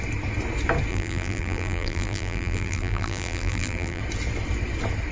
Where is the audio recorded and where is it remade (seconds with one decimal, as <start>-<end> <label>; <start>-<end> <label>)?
0.0-0.9 recorded; 0.9-4.0 remade; 4.0-5.1 recorded